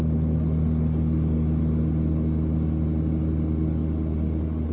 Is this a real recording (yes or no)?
yes